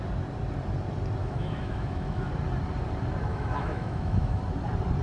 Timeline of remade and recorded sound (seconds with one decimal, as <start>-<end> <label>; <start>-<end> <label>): 0.0-1.2 recorded; 1.2-2.3 remade; 2.3-3.3 recorded; 3.3-4.4 remade; 4.4-5.0 recorded